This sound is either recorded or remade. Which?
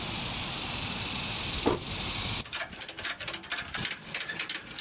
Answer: recorded